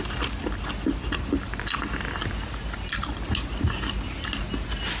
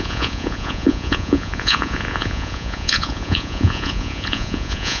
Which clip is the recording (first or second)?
first